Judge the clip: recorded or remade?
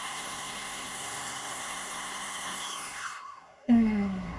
remade